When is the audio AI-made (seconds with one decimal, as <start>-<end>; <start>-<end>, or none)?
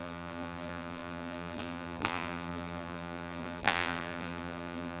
0.0-5.0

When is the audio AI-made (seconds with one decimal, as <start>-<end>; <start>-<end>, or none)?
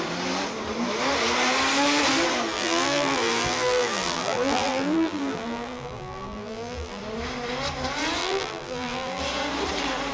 2.5-7.0; 8.2-9.2